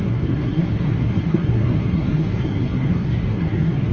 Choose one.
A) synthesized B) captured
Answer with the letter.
A